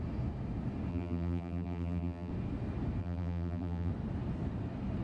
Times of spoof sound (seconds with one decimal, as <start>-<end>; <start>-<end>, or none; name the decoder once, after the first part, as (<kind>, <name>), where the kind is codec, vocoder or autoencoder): 0.9-2.3 (vocoder, BigVGAN v2); 3.0-3.9